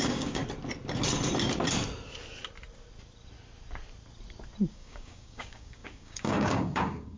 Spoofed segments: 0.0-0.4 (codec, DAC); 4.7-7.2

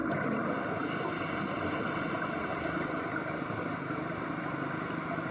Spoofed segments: none

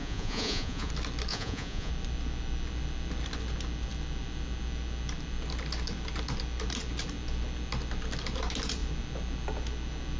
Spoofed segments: 0.0-0.9 (vocoder, Vocos); 1.3-1.9

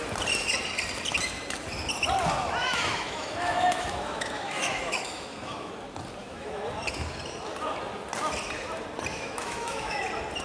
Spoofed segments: 2.6-5.7 (autoencoder, DAC-VAE); 6.2-6.7; 9.1-10.0

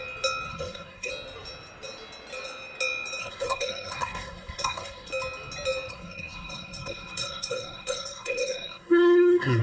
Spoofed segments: 0.5-1.1 (codec, SNAC); 3.2-5.1; 5.9-9.6

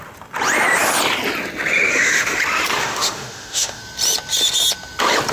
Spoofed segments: 1.9-2.4 (autoencoder, DAC-VAE); 2.8-3.8